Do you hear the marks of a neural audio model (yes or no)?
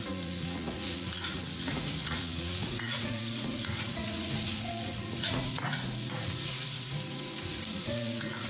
yes